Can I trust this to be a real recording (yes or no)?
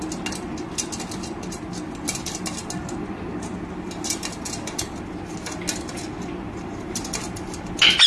yes